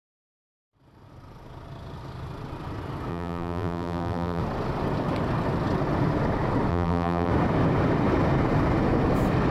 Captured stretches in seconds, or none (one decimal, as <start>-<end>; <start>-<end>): 0.0-3.1; 4.4-6.7; 7.3-9.5